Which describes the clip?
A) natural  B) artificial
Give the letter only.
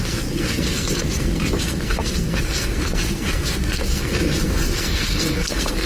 B